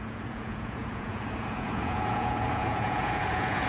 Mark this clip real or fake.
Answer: fake